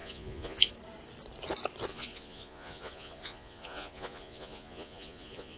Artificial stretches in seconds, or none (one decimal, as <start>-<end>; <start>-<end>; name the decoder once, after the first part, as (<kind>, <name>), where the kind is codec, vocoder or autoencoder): 0.0-0.7 (vocoder, Vocos); 1.9-5.6